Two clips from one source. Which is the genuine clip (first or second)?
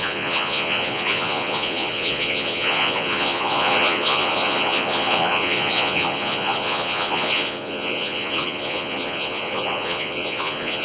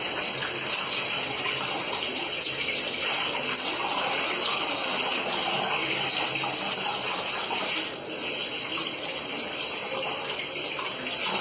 second